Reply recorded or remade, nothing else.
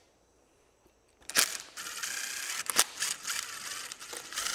recorded